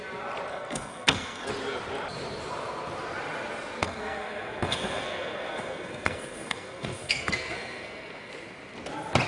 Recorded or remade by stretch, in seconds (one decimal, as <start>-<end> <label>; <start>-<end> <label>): 0.0-0.5 recorded; 0.5-1.5 remade; 1.5-3.8 recorded; 3.8-8.3 remade; 8.3-9.3 recorded